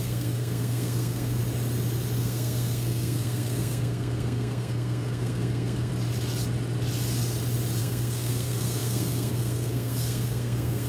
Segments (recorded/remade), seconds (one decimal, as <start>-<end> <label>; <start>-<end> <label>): 0.0-1.4 remade; 1.4-2.2 recorded; 2.2-5.9 remade; 5.9-7.8 recorded; 7.8-10.9 remade